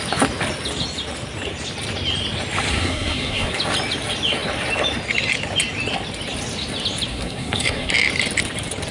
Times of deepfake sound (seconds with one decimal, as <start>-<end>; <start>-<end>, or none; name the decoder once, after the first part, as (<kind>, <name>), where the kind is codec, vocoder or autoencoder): 2.7-3.5 (codec, SNAC); 7.1-7.9